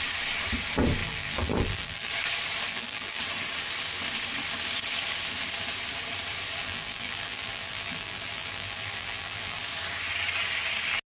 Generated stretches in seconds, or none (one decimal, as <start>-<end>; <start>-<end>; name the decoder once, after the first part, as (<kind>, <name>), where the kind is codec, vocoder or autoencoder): 1.0-2.1 (vocoder, BigVGAN v2); 2.7-3.2; 6.6-9.6

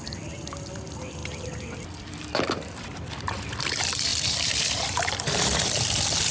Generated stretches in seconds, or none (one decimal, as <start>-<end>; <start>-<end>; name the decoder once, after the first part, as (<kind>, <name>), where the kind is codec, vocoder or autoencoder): 0.0-6.3 (vocoder, BigVGAN v2)